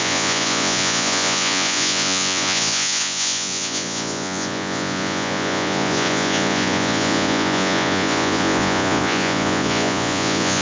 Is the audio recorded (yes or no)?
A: no